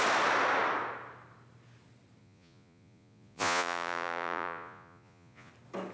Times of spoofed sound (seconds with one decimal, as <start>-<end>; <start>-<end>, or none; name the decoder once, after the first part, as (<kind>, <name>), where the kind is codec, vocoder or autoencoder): 2.2-5.5 (vocoder, Vocos)